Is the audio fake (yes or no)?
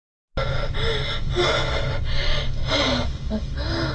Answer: no